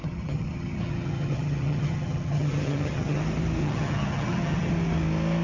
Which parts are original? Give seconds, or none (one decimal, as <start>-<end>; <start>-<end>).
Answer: 3.2-3.6; 4.7-5.4